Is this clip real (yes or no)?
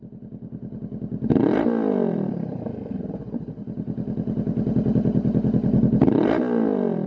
yes